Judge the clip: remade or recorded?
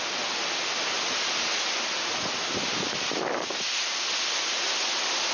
recorded